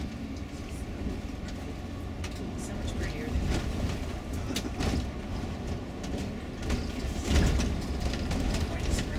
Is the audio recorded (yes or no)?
yes